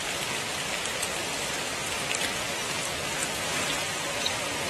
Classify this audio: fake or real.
real